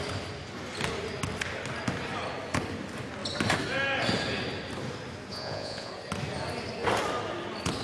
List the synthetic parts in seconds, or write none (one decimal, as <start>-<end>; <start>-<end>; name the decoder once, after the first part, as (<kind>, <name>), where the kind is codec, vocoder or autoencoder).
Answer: 5.3-5.9 (vocoder, Vocos)